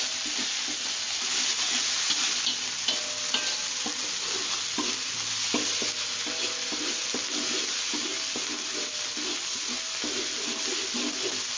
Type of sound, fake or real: real